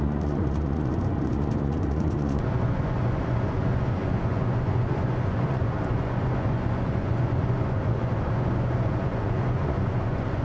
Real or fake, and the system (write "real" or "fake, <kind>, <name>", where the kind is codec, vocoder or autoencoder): fake, vocoder, Vocos